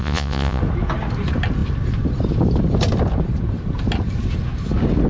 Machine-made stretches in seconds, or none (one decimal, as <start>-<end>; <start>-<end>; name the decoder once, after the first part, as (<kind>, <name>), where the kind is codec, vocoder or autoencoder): 0.0-0.6 (vocoder, Vocos)